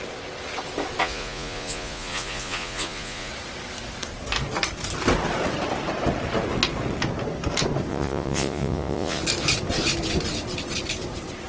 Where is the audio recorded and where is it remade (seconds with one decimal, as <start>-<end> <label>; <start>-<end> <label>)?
0.0-1.0 recorded; 1.0-3.3 remade; 3.3-7.9 recorded; 7.9-9.2 remade; 9.2-11.5 recorded